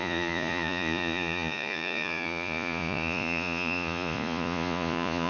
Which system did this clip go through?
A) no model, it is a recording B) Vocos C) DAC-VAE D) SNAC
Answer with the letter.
B